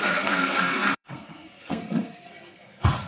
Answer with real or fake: fake